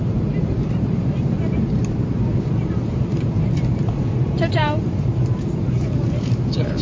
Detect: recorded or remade remade